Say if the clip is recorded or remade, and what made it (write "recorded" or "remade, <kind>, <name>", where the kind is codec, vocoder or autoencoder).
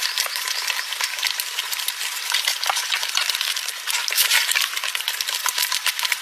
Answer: remade, vocoder, BigVGAN v2